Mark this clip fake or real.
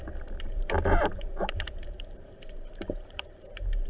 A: fake